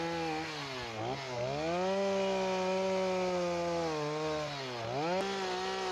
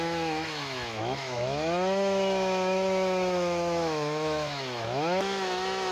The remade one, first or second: second